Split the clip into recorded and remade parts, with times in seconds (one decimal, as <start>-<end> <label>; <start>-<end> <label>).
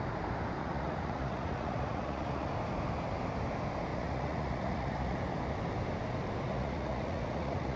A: 0.0-0.6 recorded; 0.6-2.5 remade; 2.5-3.9 recorded; 3.9-5.2 remade; 5.2-6.5 recorded; 6.5-7.8 remade